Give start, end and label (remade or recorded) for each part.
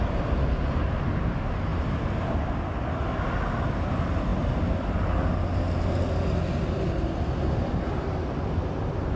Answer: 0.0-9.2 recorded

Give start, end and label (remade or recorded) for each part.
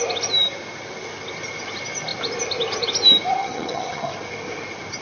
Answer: 0.0-3.4 recorded; 3.4-4.1 remade; 4.1-5.0 recorded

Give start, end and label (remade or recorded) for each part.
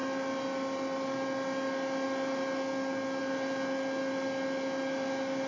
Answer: 0.0-5.5 recorded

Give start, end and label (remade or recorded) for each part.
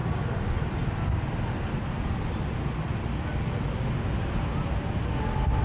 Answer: 0.0-5.6 recorded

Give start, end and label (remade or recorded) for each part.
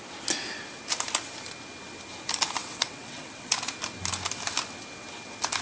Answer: 0.0-2.6 recorded; 2.6-3.5 remade; 3.5-5.6 recorded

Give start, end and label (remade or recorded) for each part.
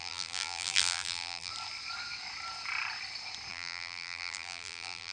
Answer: 0.0-1.5 remade; 1.5-3.5 recorded; 3.5-5.1 remade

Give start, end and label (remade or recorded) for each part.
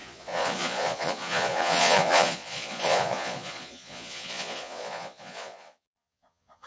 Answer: 0.0-6.7 remade